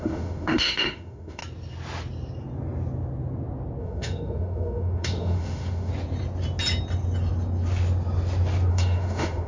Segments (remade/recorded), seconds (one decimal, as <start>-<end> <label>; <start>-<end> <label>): 0.0-1.4 remade; 1.4-3.8 recorded; 3.8-5.9 remade; 5.9-8.7 recorded; 8.7-9.5 remade